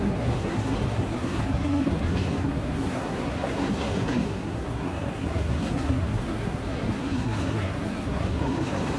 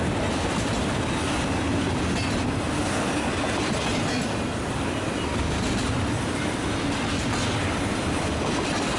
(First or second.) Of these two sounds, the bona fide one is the second